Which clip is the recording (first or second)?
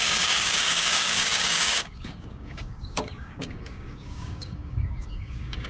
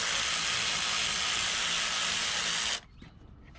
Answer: second